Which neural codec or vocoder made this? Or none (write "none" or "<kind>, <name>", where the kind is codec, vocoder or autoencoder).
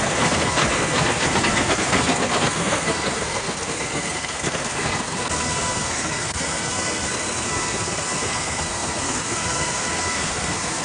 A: codec, SNAC